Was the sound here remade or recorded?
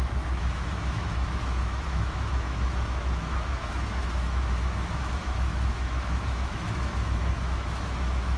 remade